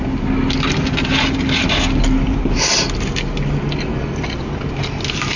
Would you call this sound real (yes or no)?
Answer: yes